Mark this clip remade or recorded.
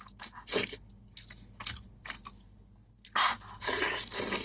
recorded